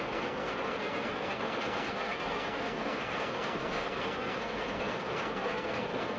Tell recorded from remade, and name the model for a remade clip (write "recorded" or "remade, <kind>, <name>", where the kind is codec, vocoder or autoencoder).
remade, codec, SNAC